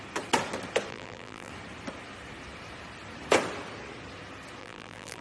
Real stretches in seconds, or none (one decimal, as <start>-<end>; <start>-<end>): 0.0-0.9; 1.5-4.6